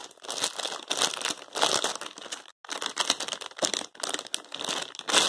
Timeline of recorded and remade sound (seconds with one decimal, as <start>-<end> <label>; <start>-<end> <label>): 0.0-5.3 recorded